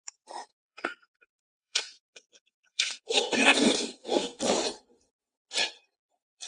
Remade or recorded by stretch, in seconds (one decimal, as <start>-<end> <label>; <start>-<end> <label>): 0.0-0.5 recorded; 0.5-4.4 remade; 4.4-6.5 recorded

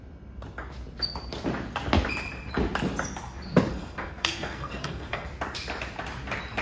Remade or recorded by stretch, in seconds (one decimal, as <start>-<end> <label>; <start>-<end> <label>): 0.0-3.7 recorded; 3.7-5.3 remade; 5.3-6.6 recorded

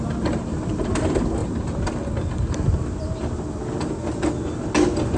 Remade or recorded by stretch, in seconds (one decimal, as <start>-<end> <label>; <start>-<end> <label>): 0.0-5.2 recorded

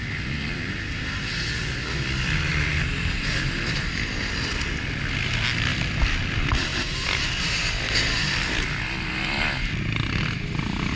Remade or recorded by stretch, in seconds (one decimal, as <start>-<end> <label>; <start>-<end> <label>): 0.0-5.7 recorded; 5.7-6.5 remade; 6.5-11.0 recorded

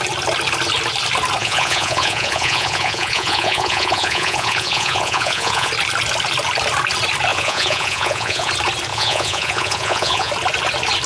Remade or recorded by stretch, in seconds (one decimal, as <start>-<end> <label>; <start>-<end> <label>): 0.0-1.4 recorded; 1.4-5.7 remade; 5.7-7.3 recorded; 7.3-8.5 remade; 8.5-8.9 recorded; 8.9-10.3 remade; 10.3-11.1 recorded

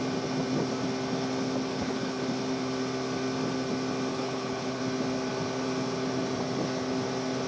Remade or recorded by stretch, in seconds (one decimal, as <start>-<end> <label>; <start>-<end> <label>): 0.0-1.7 recorded; 1.7-2.2 remade; 2.2-4.1 recorded; 4.1-4.8 remade; 4.8-7.5 recorded

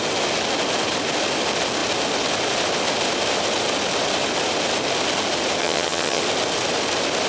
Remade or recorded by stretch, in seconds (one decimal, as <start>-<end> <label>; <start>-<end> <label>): 0.0-5.6 recorded; 5.6-6.2 remade; 6.2-7.3 recorded

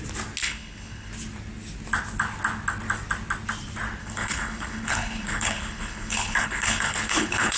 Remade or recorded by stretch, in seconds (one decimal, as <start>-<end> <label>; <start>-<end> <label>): 0.0-0.4 recorded; 0.4-1.1 remade; 1.1-4.0 recorded; 4.0-7.6 remade